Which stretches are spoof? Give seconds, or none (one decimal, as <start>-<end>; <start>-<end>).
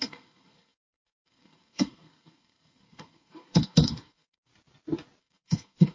0.0-4.5; 5.2-5.9